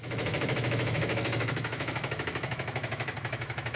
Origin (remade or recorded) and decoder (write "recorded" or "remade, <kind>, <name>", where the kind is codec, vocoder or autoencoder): remade, autoencoder, DAC-VAE